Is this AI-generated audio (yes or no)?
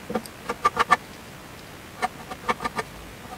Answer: yes